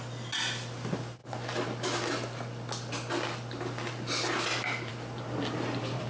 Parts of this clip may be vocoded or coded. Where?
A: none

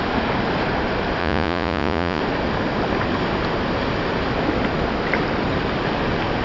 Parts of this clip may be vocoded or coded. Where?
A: 1.2-2.2 (vocoder, Vocos)

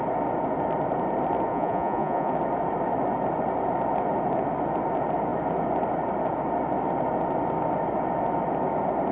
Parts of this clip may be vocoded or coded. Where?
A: 1.5-2.3 (vocoder, Vocos)

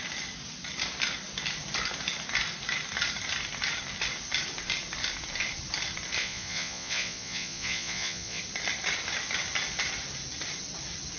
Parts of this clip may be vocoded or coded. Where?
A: 6.2-8.4 (vocoder, Vocos)

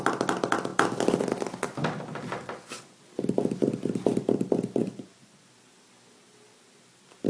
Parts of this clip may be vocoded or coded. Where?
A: 4.8-5.5 (vocoder, Vocos)